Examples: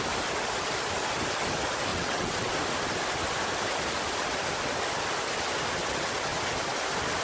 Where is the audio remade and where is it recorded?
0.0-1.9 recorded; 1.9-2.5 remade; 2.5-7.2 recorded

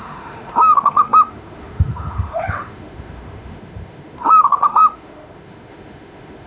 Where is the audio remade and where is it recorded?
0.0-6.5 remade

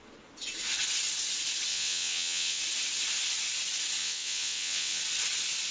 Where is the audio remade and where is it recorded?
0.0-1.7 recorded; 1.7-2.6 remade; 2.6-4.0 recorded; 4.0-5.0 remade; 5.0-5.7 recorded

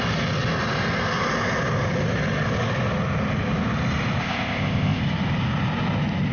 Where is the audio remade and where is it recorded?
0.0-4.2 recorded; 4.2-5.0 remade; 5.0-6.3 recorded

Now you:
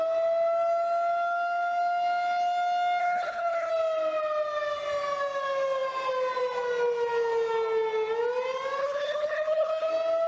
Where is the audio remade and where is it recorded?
0.0-3.0 recorded; 3.0-3.7 remade; 3.7-8.8 recorded; 8.8-9.9 remade; 9.9-10.3 recorded